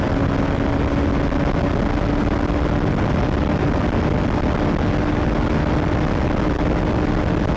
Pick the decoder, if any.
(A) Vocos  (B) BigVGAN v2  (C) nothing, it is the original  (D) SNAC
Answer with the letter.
C